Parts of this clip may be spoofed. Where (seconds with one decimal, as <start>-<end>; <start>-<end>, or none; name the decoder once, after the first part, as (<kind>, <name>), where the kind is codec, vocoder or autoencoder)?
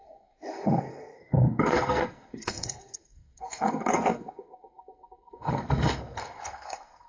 0.0-7.1 (codec, SNAC)